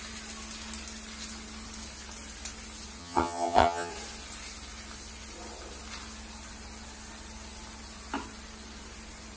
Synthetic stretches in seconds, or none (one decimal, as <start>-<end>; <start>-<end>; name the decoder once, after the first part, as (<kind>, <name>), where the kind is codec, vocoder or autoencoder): 3.0-3.9 (vocoder, HiFi-GAN)